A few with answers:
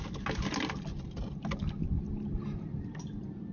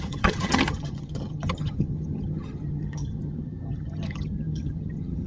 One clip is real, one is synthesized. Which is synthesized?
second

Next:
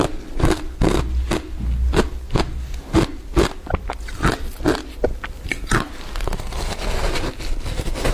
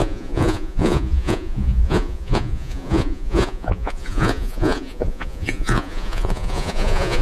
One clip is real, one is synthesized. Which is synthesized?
second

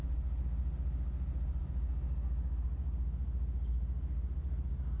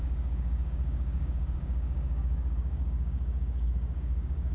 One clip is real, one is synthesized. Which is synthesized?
second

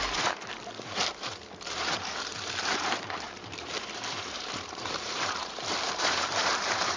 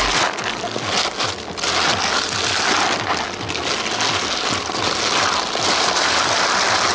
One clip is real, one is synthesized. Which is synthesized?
first